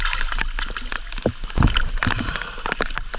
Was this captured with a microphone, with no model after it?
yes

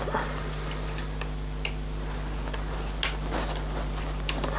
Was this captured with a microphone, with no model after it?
yes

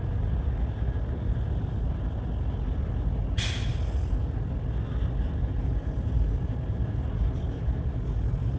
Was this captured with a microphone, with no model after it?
yes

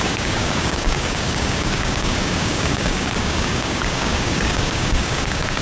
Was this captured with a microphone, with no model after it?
no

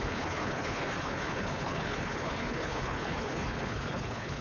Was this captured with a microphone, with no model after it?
no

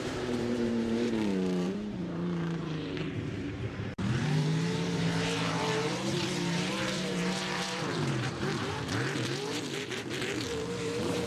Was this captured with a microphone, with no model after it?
no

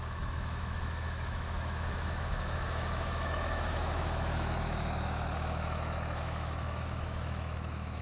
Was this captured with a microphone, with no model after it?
no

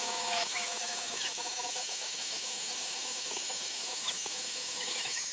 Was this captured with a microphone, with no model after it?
no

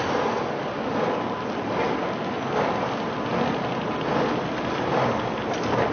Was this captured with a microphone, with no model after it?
yes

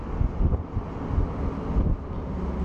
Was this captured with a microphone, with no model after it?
yes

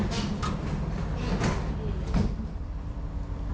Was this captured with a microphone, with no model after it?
yes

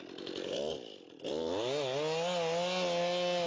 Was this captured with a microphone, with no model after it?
yes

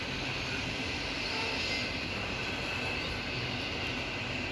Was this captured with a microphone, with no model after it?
yes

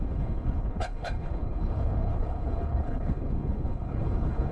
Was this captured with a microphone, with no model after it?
no